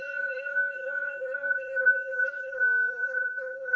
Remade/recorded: remade